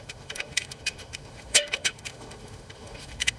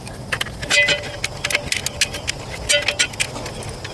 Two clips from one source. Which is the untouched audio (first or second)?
second